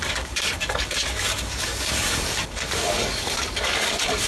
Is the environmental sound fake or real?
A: fake